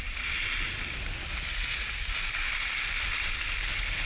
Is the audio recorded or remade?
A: recorded